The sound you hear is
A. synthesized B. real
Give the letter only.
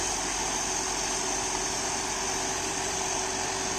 B